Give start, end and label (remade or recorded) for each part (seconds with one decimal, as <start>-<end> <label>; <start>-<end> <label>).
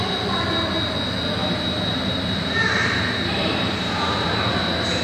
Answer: 0.0-1.4 recorded; 1.4-4.4 remade; 4.4-5.0 recorded